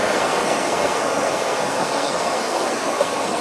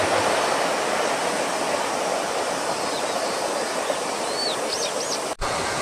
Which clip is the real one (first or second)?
second